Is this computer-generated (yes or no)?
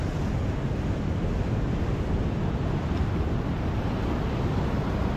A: no